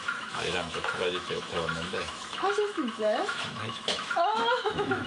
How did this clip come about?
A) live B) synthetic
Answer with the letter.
B